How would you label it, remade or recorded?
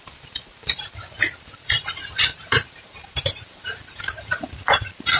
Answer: remade